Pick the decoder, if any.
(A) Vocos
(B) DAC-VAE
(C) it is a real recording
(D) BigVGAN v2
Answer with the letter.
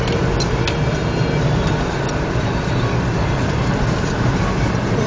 C